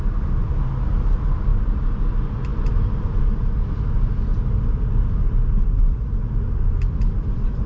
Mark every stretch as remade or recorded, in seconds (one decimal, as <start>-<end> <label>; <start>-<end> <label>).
0.0-1.5 recorded; 1.5-2.1 remade; 2.1-4.3 recorded; 4.3-7.3 remade; 7.3-7.7 recorded